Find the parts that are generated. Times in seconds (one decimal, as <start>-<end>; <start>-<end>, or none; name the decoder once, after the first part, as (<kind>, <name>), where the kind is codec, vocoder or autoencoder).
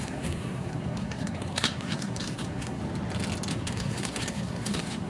0.0-2.8 (codec, SNAC); 3.5-5.1